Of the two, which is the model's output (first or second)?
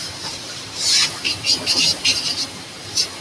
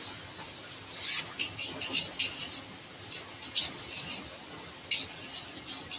first